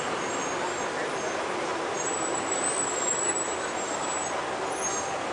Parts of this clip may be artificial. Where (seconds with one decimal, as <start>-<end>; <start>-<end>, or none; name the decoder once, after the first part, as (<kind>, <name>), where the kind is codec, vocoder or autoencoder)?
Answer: none